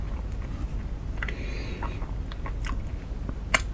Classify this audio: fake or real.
real